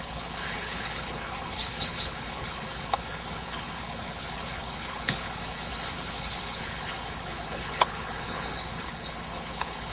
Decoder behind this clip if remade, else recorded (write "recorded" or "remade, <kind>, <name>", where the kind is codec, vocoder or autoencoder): remade, codec, HILCodec